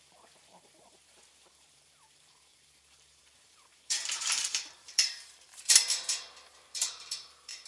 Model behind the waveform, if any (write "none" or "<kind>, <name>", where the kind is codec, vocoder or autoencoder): vocoder, BigVGAN v2